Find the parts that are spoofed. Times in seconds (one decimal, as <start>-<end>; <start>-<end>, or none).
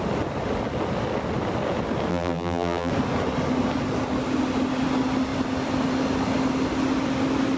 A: 2.1-2.9